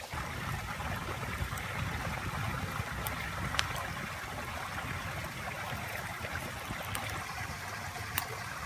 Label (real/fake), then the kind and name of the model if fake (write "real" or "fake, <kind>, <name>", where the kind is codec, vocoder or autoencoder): real